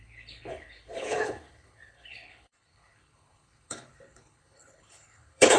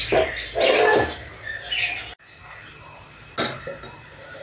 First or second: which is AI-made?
first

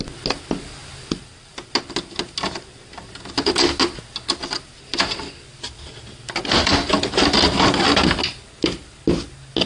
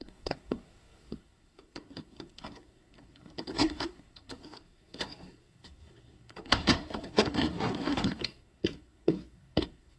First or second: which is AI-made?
second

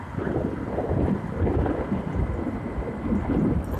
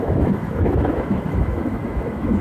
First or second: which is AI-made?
second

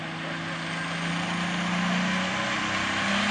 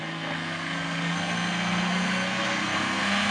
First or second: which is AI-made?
second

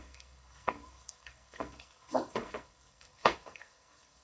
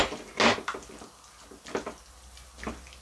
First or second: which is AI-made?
first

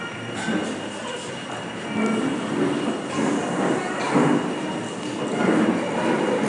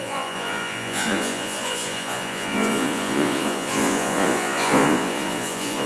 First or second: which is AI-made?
second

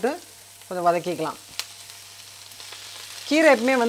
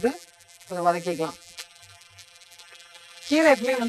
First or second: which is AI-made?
second